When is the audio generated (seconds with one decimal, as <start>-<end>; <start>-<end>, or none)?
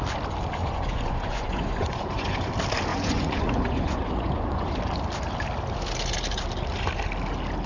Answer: 0.6-2.5; 2.9-4.8